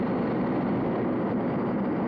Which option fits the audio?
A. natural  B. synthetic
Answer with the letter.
A